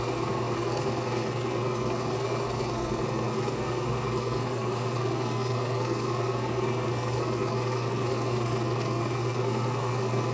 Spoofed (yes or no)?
yes